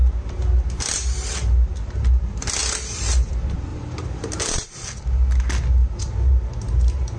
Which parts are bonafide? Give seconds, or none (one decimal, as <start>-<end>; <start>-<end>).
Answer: 0.0-3.7; 4.8-5.8